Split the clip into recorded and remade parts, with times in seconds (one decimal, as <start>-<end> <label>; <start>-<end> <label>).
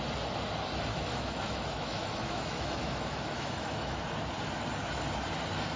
0.0-0.9 recorded; 0.9-4.0 remade; 4.0-5.8 recorded